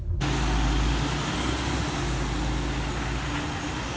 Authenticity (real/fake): real